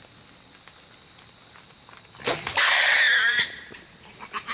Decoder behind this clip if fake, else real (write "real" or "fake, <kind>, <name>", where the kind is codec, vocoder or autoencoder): real